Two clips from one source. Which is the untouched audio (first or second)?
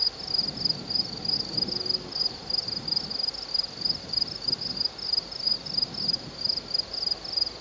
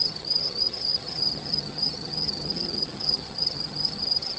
first